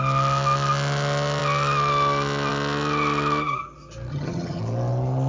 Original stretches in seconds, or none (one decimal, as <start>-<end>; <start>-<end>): 0.0-4.1; 4.6-5.3